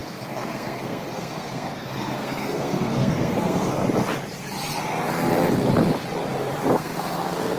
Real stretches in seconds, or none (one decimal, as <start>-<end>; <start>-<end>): 3.8-6.7